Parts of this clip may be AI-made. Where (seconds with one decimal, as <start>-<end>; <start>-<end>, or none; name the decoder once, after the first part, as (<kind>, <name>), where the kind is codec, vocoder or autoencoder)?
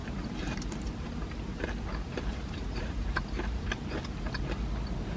0.0-0.9 (vocoder, BigVGAN v2); 2.3-3.7